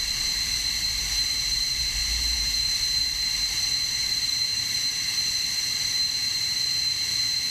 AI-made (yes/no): yes